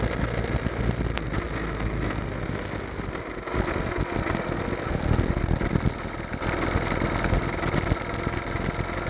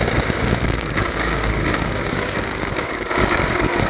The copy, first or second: second